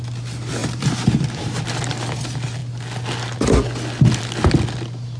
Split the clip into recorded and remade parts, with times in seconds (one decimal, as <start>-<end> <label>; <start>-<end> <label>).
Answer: 0.0-0.6 recorded; 0.6-1.7 remade; 1.7-5.2 recorded